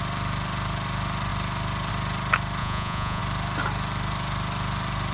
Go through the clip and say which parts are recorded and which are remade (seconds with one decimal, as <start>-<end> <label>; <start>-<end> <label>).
0.0-2.6 recorded; 2.6-3.2 remade; 3.2-5.1 recorded